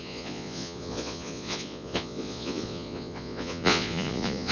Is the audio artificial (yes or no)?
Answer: yes